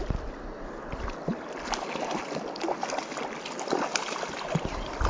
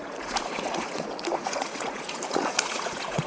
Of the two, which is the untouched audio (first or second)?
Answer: first